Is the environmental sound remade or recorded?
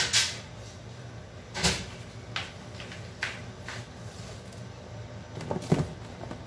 recorded